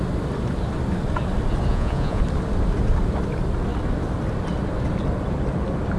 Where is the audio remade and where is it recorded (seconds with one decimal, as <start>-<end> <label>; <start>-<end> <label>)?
0.0-1.7 recorded; 1.7-2.2 remade; 2.2-6.0 recorded

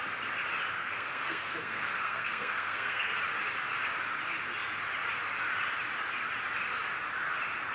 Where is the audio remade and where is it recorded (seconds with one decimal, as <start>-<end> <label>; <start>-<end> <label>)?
0.0-0.8 recorded; 0.8-3.2 remade; 3.2-7.7 recorded

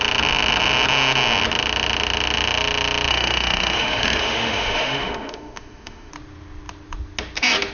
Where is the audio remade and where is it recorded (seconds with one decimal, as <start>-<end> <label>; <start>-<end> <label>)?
0.0-3.1 recorded; 3.1-6.1 remade; 6.1-7.7 recorded

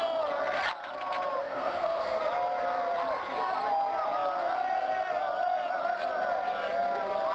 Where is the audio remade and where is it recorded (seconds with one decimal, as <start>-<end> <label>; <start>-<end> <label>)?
0.0-1.4 recorded; 1.4-2.2 remade; 2.2-7.3 recorded

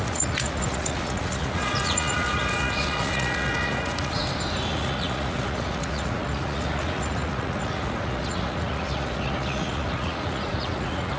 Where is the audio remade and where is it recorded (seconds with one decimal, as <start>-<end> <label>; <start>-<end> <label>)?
0.0-4.2 remade; 4.2-4.7 recorded; 4.7-11.2 remade